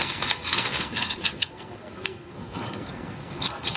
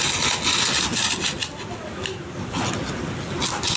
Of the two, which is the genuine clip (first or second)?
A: second